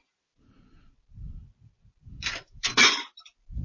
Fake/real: fake